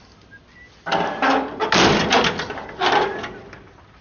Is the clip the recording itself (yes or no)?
yes